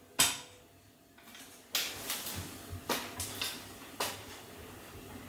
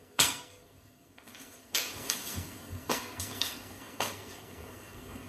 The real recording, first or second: first